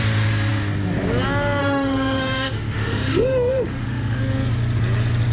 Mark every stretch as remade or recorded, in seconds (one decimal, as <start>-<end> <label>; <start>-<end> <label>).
0.0-1.6 recorded; 1.6-4.2 remade; 4.2-5.3 recorded